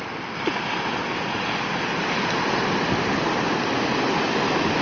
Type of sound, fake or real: real